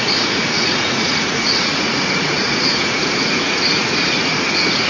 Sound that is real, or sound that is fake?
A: fake